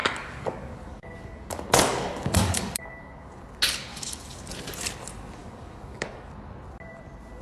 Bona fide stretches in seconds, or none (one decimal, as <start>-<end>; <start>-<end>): 3.4-3.9; 4.5-5.4; 6.3-7.4